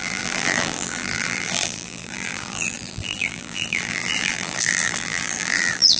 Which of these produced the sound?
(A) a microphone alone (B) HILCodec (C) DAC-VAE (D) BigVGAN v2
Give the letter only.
D